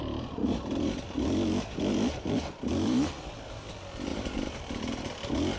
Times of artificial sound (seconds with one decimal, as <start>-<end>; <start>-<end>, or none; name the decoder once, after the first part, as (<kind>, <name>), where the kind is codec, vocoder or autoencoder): 0.4-3.1 (vocoder, BigVGAN v2); 4.1-5.0